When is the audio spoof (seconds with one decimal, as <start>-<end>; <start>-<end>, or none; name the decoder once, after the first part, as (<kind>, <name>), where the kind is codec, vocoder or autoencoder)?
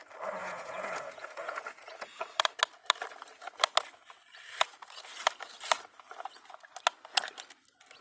0.4-2.2 (vocoder, Vocos)